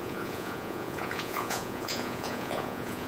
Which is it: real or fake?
fake